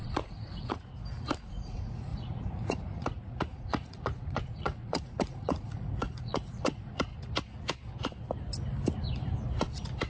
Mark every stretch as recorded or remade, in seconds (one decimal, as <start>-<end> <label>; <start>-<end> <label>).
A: 0.0-0.9 remade; 0.9-1.5 recorded; 1.5-7.1 remade; 7.1-10.1 recorded